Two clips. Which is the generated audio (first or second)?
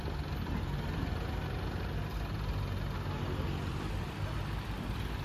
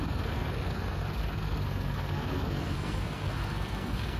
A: second